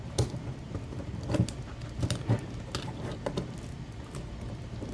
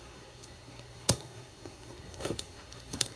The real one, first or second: first